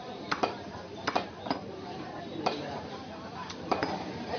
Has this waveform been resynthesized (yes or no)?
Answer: yes